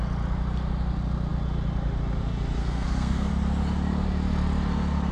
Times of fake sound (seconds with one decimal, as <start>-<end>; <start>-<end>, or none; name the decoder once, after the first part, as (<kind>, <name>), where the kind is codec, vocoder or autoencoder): 2.6-3.3 (codec, SNAC)